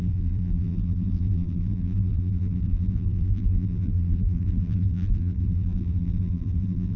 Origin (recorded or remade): remade